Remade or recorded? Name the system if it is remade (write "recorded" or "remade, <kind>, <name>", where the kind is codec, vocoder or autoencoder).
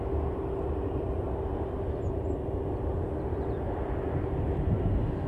recorded